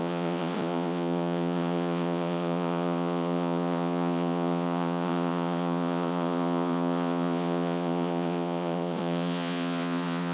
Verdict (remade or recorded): remade